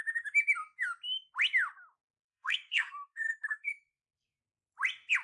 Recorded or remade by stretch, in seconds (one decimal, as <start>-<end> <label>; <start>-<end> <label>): 0.0-2.2 recorded; 2.2-4.4 remade; 4.4-5.2 recorded